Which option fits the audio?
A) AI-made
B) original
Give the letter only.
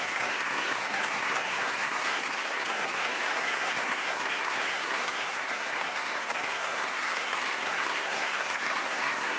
A